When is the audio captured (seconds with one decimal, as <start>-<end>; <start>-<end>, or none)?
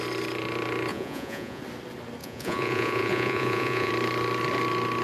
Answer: 0.0-0.9; 1.6-2.2; 3.9-5.0